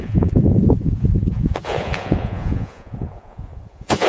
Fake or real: fake